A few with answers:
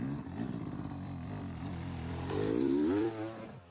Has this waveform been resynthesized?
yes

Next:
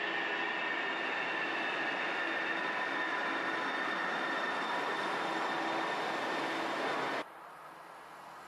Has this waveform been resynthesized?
no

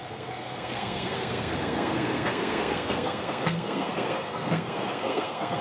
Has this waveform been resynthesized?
yes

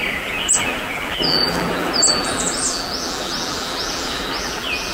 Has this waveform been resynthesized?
yes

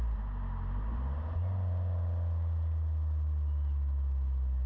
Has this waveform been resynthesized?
no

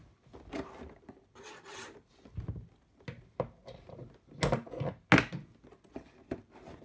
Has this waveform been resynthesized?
no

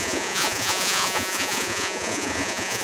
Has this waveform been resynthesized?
yes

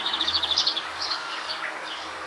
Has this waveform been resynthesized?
yes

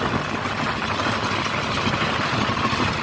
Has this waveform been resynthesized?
no